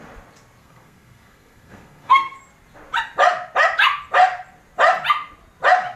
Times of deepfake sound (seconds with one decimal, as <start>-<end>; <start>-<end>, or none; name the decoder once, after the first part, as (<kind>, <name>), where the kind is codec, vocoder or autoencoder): 0.6-2.4 (codec, SNAC)